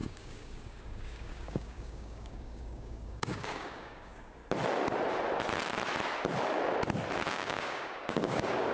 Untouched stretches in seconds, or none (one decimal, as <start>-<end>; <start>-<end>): 4.4-7.3